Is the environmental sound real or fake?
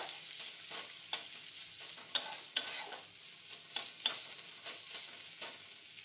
real